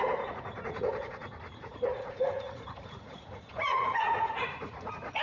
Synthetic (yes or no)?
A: yes